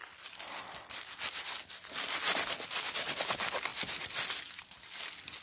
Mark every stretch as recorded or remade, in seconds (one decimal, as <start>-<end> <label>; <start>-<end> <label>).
0.0-5.4 recorded